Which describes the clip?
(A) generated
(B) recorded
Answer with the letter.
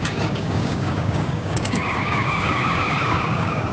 A